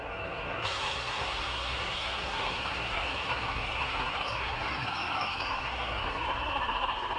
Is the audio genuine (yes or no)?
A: no